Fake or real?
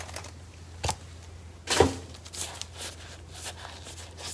real